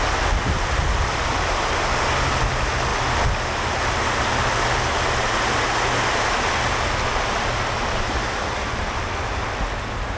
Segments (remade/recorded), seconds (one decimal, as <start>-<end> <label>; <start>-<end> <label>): 0.0-10.2 recorded